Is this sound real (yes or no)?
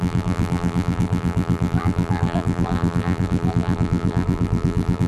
no